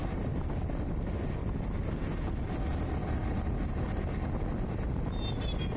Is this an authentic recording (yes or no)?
yes